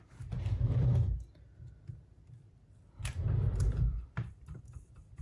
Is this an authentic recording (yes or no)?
no